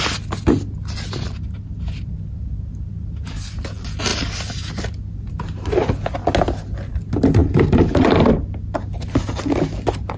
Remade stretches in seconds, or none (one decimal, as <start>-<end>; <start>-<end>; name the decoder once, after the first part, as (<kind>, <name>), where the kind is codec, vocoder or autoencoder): 7.4-8.3 (vocoder, BigVGAN v2)